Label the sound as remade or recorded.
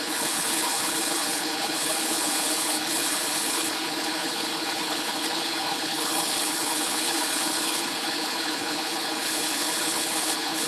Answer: remade